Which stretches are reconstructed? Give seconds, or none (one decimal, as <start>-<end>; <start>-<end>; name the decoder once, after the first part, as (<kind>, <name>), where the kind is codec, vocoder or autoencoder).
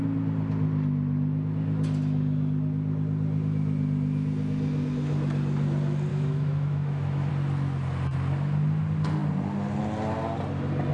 6.1-7.3 (autoencoder, DAC-VAE)